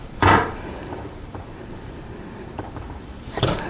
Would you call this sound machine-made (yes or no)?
yes